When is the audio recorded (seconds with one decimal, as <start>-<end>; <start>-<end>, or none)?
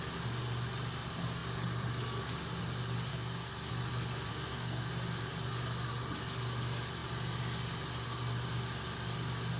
0.0-3.1; 3.7-4.3; 4.9-9.6